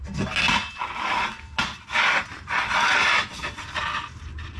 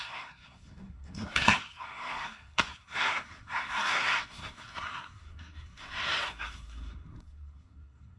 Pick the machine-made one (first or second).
second